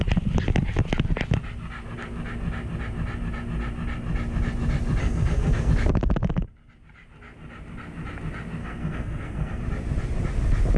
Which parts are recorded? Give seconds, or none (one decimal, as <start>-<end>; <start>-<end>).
0.0-5.0; 5.7-8.6; 9.6-10.8